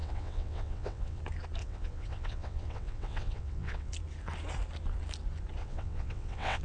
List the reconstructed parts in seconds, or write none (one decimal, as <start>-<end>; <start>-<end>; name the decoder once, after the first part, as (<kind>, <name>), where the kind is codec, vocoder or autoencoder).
0.0-1.2 (vocoder, WaveNeXt); 1.6-3.9; 5.6-6.6